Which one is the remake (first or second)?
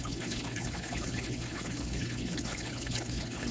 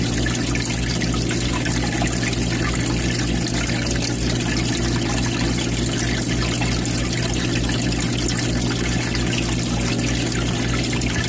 first